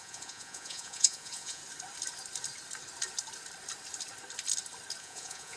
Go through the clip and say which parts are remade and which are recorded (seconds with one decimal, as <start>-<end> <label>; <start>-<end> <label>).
0.0-1.6 remade; 1.6-5.0 recorded; 5.0-5.6 remade